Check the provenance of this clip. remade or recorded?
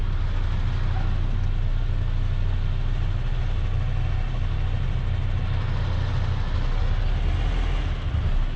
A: recorded